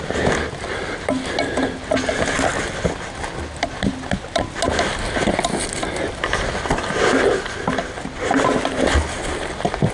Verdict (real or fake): real